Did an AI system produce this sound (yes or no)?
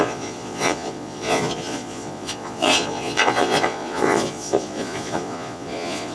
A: yes